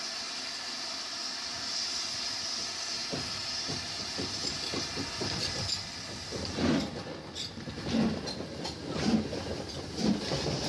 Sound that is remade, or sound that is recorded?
recorded